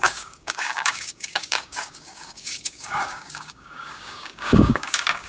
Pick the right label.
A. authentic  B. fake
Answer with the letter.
B